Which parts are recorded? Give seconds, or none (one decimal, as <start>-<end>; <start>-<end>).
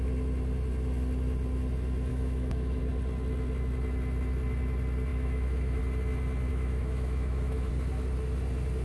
0.0-2.1; 2.8-5.1; 5.8-6.5; 7.7-8.8